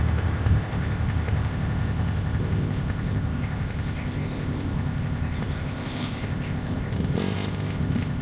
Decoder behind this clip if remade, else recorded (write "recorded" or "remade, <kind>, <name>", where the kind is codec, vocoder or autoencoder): remade, codec, ZipCodec